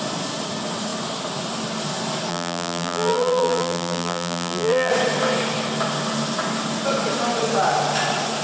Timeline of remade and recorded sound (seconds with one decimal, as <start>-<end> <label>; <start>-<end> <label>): 0.0-2.3 recorded; 2.3-4.9 remade; 4.9-8.4 recorded